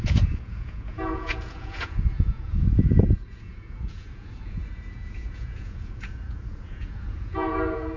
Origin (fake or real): fake